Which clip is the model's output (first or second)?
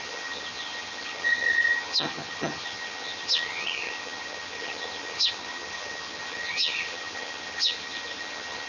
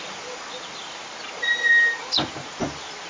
first